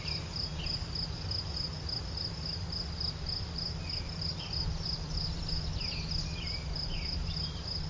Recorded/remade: recorded